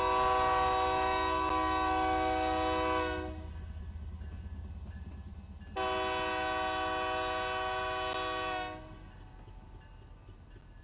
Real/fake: real